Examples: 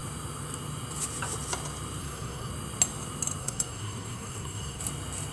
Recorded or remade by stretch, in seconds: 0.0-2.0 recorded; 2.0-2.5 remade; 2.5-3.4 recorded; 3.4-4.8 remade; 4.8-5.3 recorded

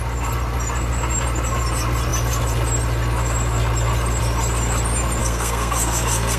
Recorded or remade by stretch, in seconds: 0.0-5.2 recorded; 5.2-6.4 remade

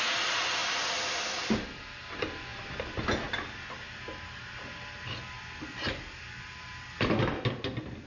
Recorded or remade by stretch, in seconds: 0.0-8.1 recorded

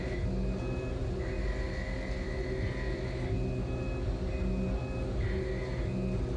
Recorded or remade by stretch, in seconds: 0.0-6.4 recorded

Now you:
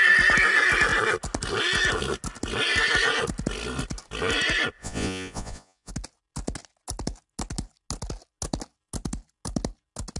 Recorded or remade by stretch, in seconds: 0.0-4.8 recorded; 4.8-5.9 remade; 5.9-10.2 recorded

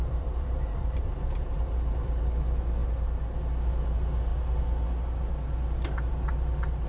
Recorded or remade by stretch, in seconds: 0.0-2.2 remade; 2.2-6.9 recorded

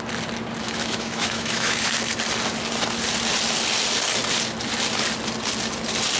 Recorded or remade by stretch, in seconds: 0.0-0.6 recorded; 0.6-2.1 remade; 2.1-6.2 recorded

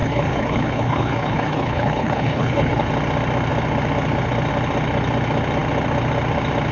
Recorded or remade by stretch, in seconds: 0.0-2.9 remade; 2.9-6.7 recorded